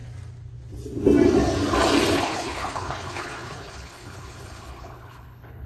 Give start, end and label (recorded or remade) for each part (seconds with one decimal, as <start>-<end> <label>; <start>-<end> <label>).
0.0-2.1 recorded; 2.1-5.7 remade